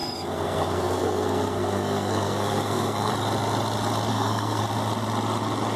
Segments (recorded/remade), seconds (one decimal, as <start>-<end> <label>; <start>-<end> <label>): 0.0-3.1 remade; 3.1-4.1 recorded; 4.1-4.6 remade; 4.6-5.8 recorded